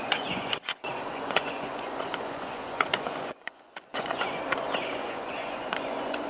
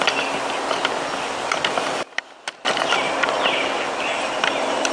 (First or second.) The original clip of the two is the second